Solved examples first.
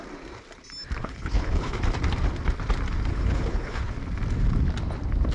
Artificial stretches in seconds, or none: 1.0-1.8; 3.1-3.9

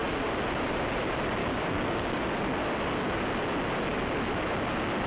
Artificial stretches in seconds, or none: 1.4-2.2

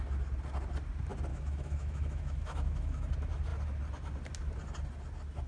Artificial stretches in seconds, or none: 1.3-3.1